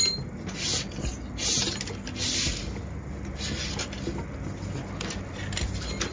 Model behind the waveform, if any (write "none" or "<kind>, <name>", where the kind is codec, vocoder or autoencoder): none